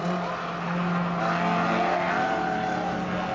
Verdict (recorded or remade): recorded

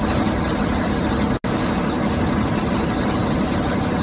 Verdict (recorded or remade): recorded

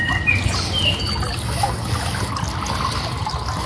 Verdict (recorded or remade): recorded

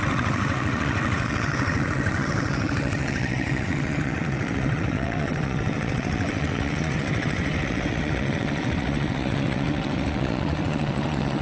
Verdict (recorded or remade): remade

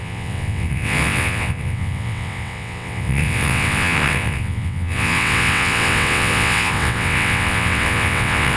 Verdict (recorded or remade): remade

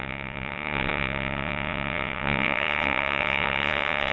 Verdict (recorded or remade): remade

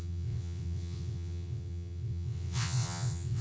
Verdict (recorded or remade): remade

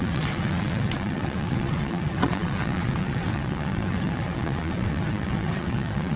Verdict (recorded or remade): remade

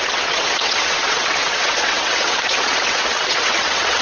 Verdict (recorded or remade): remade